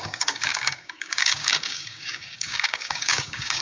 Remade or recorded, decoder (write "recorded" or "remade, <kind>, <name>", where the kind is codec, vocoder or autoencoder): remade, codec, DAC